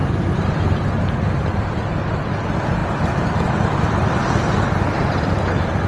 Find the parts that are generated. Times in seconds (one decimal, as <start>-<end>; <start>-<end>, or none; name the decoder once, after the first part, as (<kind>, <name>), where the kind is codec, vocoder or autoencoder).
none